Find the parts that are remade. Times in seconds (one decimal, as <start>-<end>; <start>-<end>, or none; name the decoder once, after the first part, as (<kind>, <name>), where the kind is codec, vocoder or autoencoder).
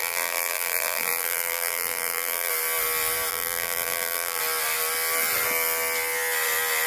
0.0-2.5 (vocoder, BigVGAN v2); 3.3-4.4